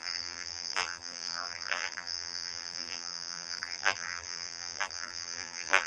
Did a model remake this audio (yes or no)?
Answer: yes